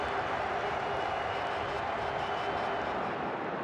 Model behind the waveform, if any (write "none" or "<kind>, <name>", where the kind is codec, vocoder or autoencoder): none